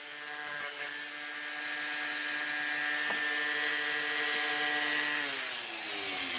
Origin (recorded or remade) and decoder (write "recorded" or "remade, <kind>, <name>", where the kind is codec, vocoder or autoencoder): recorded